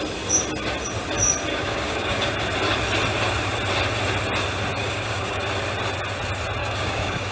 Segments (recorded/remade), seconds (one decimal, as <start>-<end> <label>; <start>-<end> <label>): 0.0-1.5 recorded; 1.5-2.3 remade; 2.3-4.8 recorded; 4.8-5.4 remade; 5.4-6.6 recorded; 6.6-7.3 remade